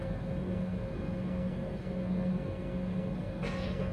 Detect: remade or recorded remade